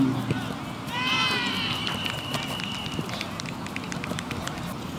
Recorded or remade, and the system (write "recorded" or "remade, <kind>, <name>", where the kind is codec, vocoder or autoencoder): recorded